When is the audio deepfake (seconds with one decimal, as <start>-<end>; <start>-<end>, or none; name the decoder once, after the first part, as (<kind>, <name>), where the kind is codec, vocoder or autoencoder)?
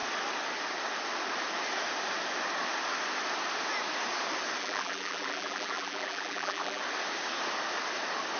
4.6-6.8 (vocoder, BigVGAN v2)